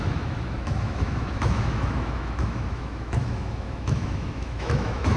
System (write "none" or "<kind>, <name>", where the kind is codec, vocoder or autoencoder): autoencoder, DAC-VAE